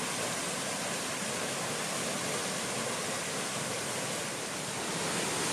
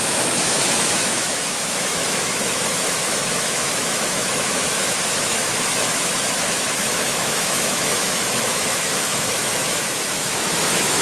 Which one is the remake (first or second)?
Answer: second